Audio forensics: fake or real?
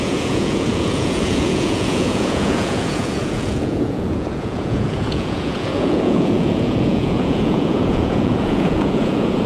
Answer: fake